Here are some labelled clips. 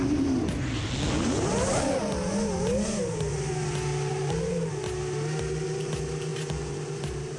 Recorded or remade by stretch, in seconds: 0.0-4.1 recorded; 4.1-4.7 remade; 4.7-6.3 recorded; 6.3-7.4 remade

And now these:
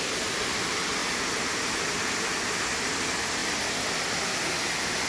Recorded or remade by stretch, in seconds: 0.0-5.1 recorded

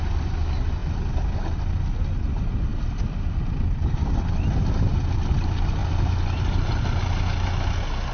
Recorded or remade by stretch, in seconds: 0.0-8.1 recorded

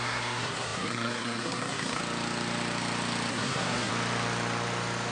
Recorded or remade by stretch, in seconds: 0.0-2.0 remade; 2.0-3.3 recorded; 3.3-3.9 remade; 3.9-5.1 recorded

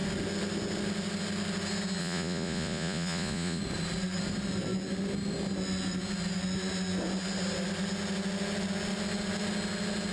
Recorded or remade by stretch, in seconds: 0.0-2.0 recorded; 2.0-3.6 remade; 3.6-10.1 recorded

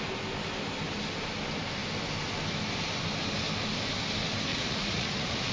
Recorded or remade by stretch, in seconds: 0.0-4.5 recorded; 4.5-5.5 remade